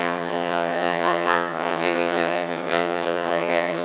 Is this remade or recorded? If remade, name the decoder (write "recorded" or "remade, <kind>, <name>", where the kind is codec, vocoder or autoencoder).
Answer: remade, vocoder, HiFi-GAN